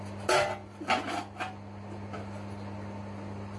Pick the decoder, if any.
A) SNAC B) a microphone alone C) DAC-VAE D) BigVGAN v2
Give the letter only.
B